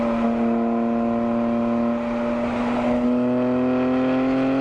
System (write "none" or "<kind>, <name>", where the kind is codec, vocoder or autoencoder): none